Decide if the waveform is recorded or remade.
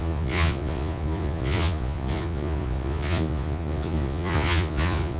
remade